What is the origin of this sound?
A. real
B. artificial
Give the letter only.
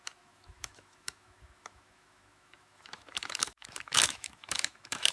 B